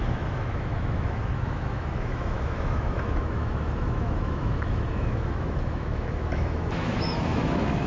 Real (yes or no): no